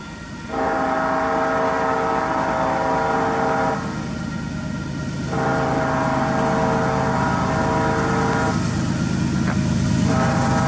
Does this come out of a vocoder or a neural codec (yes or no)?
no